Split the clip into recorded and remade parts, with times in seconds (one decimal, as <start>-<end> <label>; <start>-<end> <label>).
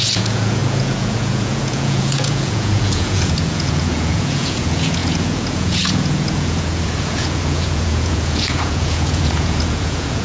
0.0-10.2 remade